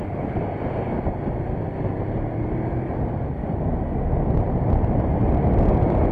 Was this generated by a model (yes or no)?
no